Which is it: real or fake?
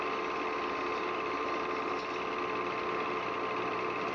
real